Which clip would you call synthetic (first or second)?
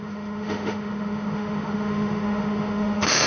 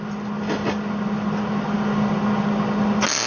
first